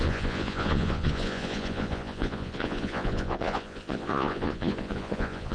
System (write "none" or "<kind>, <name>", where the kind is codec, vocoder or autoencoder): vocoder, Vocos